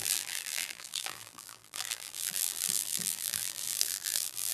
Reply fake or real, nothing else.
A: fake